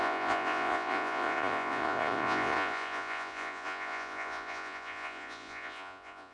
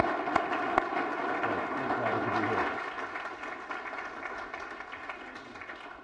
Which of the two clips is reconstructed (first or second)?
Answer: first